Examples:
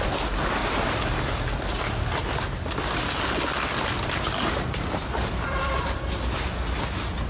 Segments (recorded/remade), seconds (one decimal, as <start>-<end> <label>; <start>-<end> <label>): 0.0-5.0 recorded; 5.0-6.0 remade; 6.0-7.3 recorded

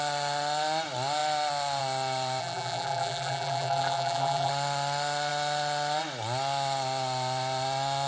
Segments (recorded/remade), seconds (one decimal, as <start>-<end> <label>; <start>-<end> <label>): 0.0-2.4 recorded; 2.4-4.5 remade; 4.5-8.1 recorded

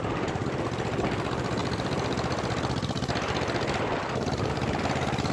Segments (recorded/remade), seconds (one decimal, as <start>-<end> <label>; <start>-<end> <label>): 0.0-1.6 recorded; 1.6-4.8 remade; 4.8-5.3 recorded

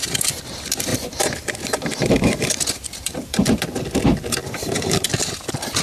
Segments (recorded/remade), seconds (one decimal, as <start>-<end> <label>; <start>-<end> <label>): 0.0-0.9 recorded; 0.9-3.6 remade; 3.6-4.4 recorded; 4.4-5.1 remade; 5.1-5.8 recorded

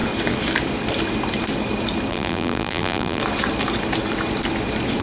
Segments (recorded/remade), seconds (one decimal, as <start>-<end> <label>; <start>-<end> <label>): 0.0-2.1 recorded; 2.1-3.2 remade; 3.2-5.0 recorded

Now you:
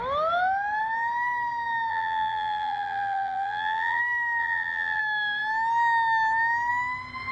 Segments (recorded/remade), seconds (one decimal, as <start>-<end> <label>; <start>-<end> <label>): 0.0-1.9 recorded; 1.9-4.0 remade; 4.0-4.4 recorded; 4.4-5.0 remade; 5.0-7.3 recorded

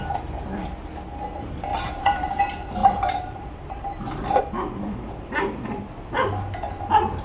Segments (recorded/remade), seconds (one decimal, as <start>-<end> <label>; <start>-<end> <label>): 0.0-1.7 recorded; 1.7-2.4 remade; 2.4-2.8 recorded; 2.8-4.4 remade; 4.4-7.2 recorded

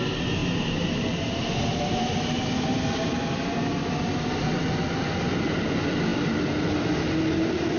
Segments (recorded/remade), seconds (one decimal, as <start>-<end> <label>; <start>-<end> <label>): 0.0-7.8 recorded